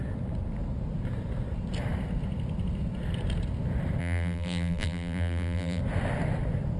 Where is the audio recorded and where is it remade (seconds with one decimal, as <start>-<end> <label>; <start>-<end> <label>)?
0.0-4.0 recorded; 4.0-5.8 remade; 5.8-6.8 recorded